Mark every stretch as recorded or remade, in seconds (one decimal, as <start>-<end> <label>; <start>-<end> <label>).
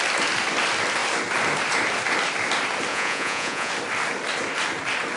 0.0-2.9 recorded; 2.9-3.7 remade; 3.7-5.2 recorded